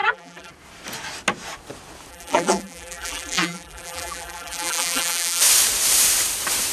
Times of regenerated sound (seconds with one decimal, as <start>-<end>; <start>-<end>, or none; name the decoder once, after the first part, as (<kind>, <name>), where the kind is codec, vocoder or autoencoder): 0.0-0.5 (vocoder, BigVGAN v2); 2.1-5.4